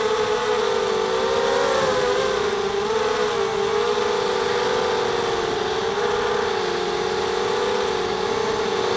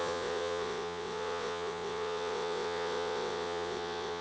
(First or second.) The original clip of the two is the first